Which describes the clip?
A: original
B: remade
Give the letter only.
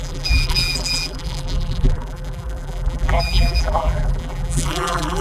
B